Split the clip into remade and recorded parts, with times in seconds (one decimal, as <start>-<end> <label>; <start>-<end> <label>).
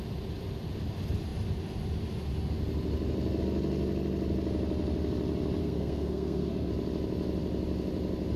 0.0-5.6 recorded; 5.6-6.7 remade; 6.7-8.4 recorded